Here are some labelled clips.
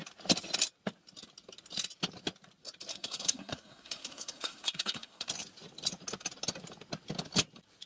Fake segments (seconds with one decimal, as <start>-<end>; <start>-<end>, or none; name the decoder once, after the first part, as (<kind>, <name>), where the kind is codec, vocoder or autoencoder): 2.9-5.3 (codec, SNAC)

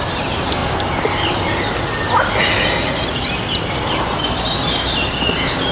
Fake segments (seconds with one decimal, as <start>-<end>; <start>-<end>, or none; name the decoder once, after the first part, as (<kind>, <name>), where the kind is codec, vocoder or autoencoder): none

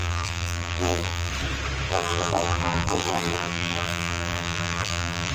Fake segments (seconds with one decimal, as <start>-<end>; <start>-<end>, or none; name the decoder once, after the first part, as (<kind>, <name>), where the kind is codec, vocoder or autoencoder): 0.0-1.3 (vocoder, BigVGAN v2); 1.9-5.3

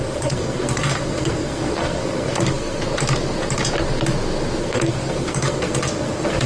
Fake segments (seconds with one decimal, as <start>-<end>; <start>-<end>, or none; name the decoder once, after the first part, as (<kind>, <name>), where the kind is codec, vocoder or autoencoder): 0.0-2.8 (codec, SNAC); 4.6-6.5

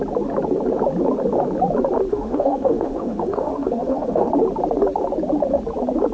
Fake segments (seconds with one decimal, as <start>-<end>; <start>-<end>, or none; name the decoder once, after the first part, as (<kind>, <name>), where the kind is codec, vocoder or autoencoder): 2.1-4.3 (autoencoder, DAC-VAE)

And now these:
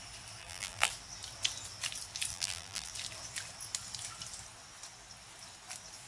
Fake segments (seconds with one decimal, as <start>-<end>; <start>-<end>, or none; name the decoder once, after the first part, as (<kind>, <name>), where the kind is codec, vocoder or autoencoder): 0.4-0.9 (vocoder, BigVGAN v2); 2.3-2.9

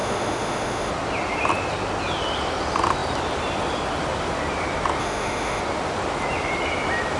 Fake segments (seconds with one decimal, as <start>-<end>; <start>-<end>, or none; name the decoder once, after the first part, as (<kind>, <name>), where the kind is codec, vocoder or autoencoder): 0.0-0.9 (autoencoder, DAC-VAE); 5.0-5.6

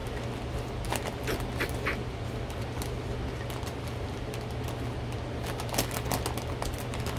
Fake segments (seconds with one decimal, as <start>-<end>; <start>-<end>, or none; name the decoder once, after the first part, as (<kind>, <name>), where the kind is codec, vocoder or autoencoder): none